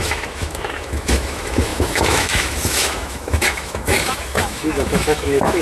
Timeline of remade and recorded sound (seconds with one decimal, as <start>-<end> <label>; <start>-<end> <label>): 0.0-5.6 remade